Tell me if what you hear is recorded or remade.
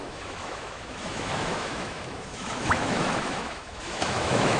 remade